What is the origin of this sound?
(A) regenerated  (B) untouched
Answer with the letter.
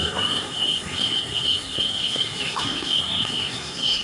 A